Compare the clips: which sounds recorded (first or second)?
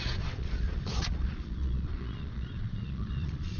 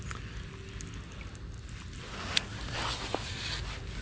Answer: second